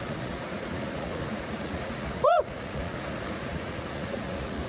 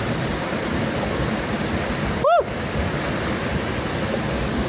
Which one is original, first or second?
second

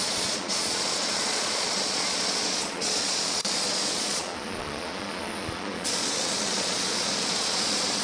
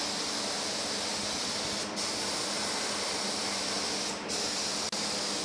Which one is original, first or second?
second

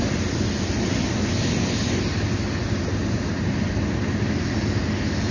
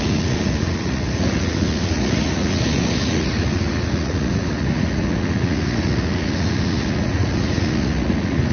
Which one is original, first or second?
first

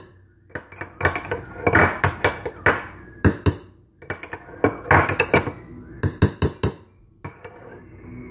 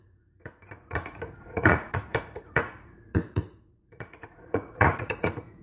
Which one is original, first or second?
first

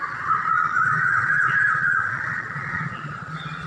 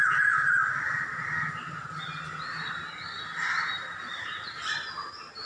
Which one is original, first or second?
second